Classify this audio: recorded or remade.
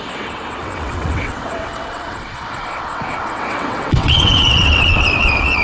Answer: remade